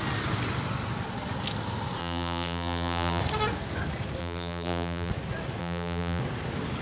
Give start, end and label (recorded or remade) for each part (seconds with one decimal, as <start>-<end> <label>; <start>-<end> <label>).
0.0-2.0 recorded; 2.0-3.2 remade; 3.2-4.2 recorded; 4.2-5.1 remade; 5.1-5.6 recorded; 5.6-6.2 remade; 6.2-6.8 recorded